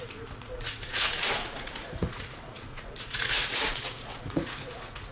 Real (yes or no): no